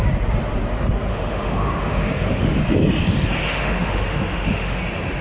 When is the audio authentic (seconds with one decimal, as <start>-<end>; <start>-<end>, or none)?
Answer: 0.0-1.1; 2.6-3.4; 4.8-5.2